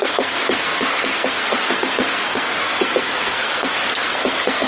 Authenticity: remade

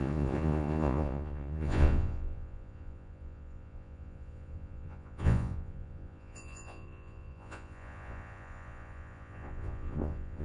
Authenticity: remade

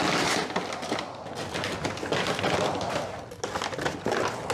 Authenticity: recorded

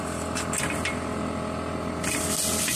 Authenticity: recorded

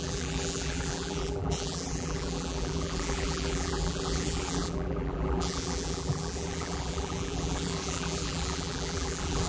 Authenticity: remade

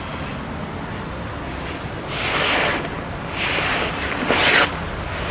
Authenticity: recorded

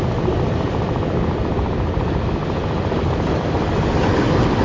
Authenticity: recorded